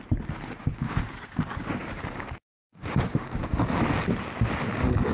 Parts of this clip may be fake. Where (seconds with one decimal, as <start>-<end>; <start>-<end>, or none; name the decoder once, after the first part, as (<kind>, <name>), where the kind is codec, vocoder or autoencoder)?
0.6-3.7 (codec, DAC)